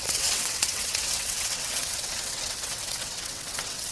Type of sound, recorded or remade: remade